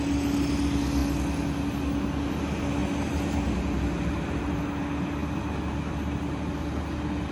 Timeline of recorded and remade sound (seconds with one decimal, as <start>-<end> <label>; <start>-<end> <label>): 0.0-7.3 recorded